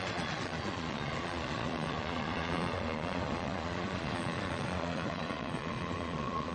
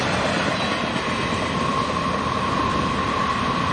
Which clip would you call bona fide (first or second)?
second